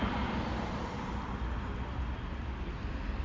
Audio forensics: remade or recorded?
recorded